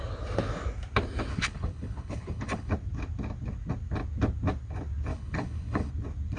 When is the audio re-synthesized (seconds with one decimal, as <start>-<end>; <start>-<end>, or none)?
1.3-2.7; 5.1-5.9